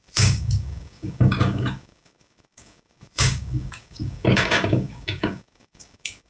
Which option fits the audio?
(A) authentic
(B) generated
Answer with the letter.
B